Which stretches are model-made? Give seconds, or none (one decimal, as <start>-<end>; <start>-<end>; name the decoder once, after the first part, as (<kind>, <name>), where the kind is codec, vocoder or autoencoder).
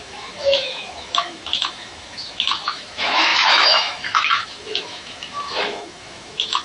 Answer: 0.0-6.6 (autoencoder, DAC-VAE)